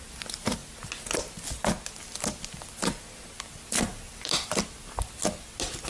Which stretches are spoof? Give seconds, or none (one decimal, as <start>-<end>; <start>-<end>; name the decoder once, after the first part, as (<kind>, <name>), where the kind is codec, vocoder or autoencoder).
3.9-4.6 (vocoder, BigVGAN v2)